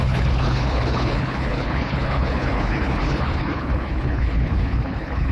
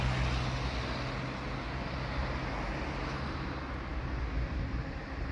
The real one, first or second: second